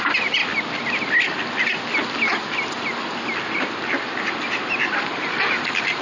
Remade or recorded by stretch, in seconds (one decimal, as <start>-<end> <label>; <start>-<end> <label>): 0.0-0.4 remade; 0.4-4.0 recorded; 4.0-6.0 remade

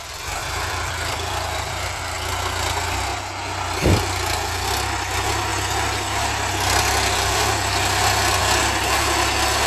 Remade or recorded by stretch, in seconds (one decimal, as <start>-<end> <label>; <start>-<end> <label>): 0.0-0.4 recorded; 0.4-2.0 remade; 2.0-9.7 recorded

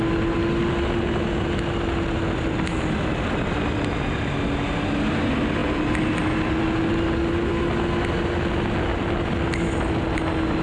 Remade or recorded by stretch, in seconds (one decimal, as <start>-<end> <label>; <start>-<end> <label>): 0.0-5.6 recorded; 5.6-6.5 remade; 6.5-10.6 recorded

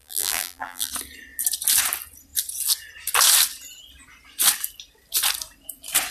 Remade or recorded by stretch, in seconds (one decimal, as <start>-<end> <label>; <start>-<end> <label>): 0.0-0.9 remade; 0.9-6.1 recorded

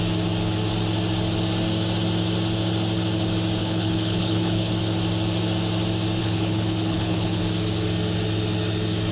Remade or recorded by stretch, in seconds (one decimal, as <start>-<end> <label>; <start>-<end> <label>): 0.0-3.6 recorded; 3.6-4.7 remade; 4.7-6.2 recorded; 6.2-7.4 remade; 7.4-9.1 recorded

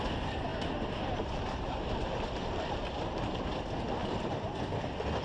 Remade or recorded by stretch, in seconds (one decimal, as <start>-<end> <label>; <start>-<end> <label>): 0.0-0.5 recorded; 0.5-3.6 remade; 3.6-5.2 recorded